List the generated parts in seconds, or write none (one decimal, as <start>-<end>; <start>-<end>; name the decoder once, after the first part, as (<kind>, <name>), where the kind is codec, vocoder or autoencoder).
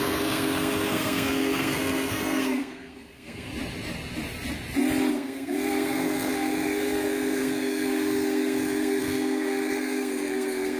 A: 0.0-3.5 (codec, SNAC); 5.1-10.8